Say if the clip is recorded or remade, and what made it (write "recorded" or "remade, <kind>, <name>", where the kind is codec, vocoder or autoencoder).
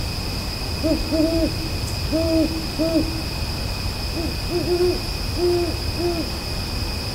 recorded